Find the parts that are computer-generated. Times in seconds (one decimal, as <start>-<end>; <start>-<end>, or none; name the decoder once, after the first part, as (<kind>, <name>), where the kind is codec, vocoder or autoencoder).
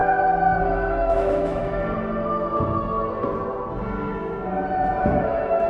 0.6-1.6 (autoencoder, DAC-VAE); 5.0-5.7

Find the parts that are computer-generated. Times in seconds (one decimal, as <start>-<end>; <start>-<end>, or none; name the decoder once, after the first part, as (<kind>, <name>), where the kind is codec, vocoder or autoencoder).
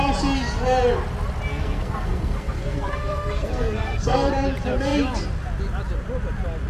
1.5-4.3 (codec, SNAC)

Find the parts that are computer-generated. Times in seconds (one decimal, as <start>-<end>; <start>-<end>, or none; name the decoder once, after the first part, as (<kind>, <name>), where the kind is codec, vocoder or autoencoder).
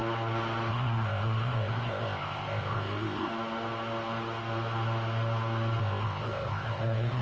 0.7-3.3 (codec, ZipCodec); 5.8-7.2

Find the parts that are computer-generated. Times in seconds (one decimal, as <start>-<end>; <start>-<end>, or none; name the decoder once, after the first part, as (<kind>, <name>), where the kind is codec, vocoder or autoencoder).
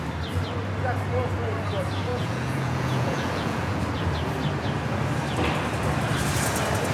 2.1-3.8 (vocoder, Vocos)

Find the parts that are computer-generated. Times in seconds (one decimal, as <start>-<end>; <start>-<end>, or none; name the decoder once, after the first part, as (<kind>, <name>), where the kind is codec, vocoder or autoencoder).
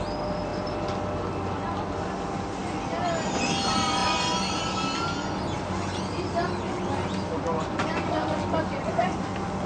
none